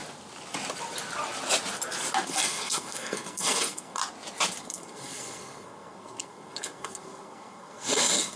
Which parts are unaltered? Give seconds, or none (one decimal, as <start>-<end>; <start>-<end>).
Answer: 0.0-2.3; 4.0-4.6